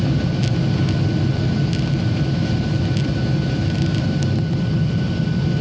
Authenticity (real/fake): real